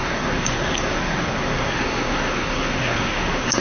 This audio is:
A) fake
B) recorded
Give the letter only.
A